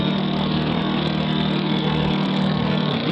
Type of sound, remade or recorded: remade